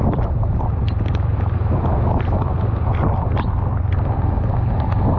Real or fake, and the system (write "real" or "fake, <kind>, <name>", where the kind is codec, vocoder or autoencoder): real